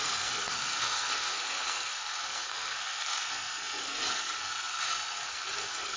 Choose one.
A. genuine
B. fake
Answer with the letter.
B